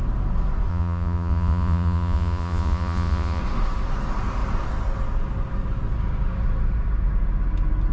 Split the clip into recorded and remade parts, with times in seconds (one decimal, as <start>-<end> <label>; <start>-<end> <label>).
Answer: 0.0-0.7 recorded; 0.7-3.4 remade; 3.4-7.9 recorded